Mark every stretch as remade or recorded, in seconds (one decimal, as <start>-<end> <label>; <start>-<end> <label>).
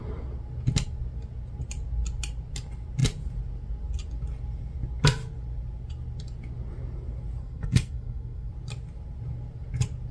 0.0-7.4 recorded; 7.4-8.5 remade; 8.5-10.1 recorded